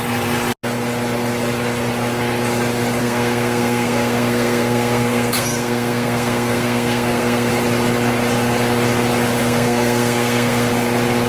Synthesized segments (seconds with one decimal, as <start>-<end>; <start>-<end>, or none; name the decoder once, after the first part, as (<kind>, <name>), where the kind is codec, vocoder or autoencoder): 3.0-7.5 (codec, SNAC); 9.4-10.7